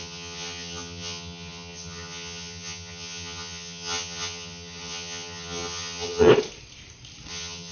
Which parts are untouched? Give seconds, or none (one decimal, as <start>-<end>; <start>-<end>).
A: 6.3-7.3